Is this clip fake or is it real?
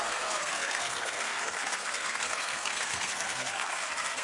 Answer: fake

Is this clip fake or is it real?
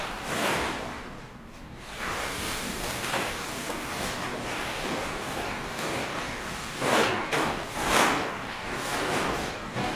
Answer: fake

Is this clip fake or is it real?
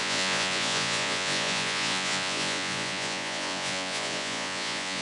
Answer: fake